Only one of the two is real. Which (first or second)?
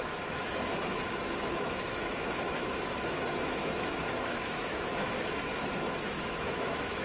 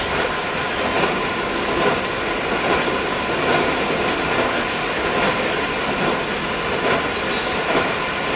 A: second